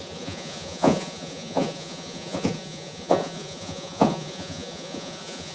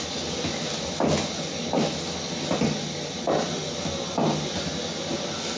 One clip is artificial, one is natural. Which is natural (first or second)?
second